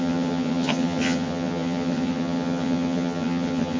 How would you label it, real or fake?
fake